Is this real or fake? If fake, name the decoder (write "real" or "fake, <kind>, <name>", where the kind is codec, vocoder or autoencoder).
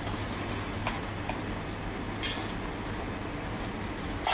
real